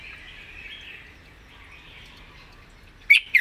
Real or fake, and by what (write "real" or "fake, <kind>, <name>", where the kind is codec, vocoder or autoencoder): real